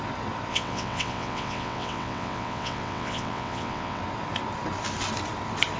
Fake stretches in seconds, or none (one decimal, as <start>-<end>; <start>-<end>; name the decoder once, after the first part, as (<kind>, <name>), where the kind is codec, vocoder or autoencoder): 0.5-4.0 (vocoder, WaveNeXt)